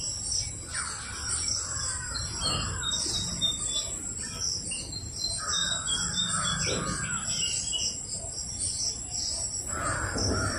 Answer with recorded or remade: recorded